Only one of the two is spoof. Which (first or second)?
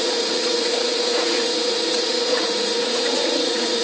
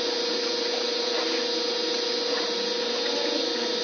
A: first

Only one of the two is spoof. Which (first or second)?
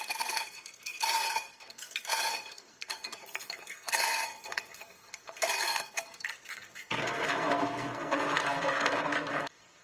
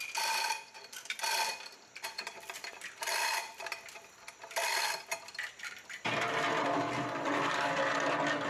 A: first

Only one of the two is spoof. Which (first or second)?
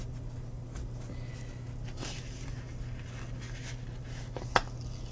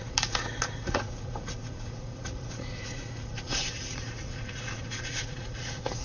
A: second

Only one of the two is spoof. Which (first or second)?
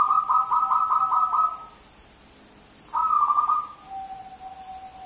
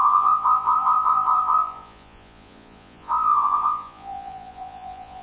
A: second